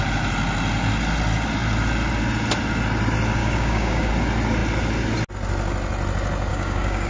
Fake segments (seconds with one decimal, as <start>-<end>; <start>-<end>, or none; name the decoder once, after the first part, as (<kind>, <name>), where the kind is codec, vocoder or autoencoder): 3.4-4.1 (codec, DAC); 6.5-7.1